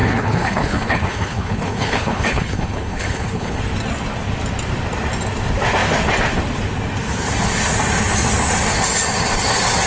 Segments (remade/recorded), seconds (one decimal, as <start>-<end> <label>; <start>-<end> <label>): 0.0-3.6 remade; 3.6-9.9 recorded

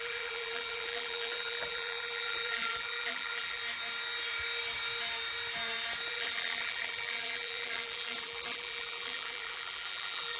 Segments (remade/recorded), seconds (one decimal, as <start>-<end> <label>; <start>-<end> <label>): 0.0-3.6 remade; 3.6-6.1 recorded; 6.1-10.4 remade

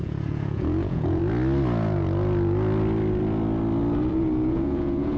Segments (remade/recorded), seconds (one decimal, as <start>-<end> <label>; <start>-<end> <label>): 0.0-1.2 remade; 1.2-4.1 recorded; 4.1-5.2 remade

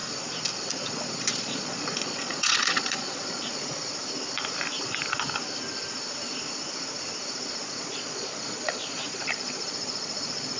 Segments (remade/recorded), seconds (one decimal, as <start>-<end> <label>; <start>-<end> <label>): 0.0-0.9 recorded; 0.9-3.8 remade; 3.8-7.6 recorded; 7.6-10.6 remade

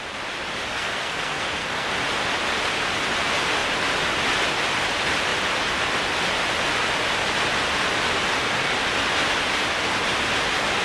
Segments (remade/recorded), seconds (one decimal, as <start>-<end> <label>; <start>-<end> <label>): 0.0-0.7 recorded; 0.7-1.9 remade; 1.9-10.8 recorded

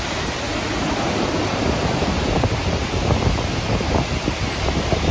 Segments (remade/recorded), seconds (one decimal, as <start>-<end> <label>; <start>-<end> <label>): 0.0-5.1 recorded

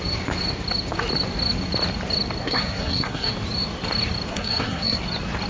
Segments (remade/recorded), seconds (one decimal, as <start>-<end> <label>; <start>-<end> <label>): 0.0-2.4 recorded; 2.4-3.3 remade; 3.3-4.3 recorded; 4.3-5.0 remade; 5.0-5.5 recorded

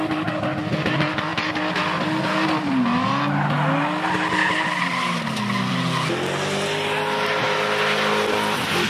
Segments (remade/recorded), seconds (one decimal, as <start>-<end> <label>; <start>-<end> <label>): 0.0-8.9 recorded